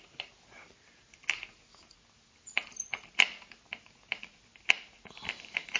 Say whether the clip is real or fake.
real